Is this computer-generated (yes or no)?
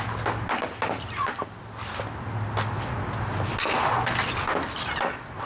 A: no